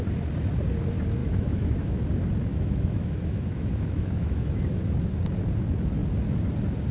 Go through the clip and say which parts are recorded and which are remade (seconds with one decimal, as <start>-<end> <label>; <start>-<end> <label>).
0.0-1.2 recorded; 1.2-2.0 remade; 2.0-2.5 recorded; 2.5-4.6 remade; 4.6-6.9 recorded